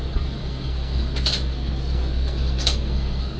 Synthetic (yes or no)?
yes